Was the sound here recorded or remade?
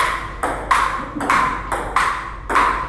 recorded